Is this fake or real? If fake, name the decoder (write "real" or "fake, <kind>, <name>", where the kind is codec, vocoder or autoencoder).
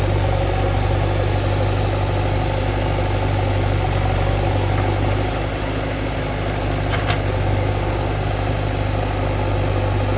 real